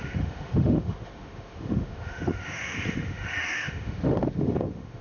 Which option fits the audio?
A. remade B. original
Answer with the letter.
A